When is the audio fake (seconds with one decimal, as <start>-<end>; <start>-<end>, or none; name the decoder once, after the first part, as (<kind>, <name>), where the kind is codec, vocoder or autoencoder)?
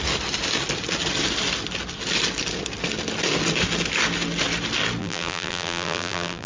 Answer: 5.0-6.5 (vocoder, BigVGAN v2)